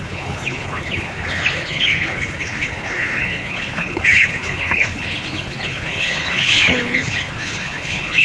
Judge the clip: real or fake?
fake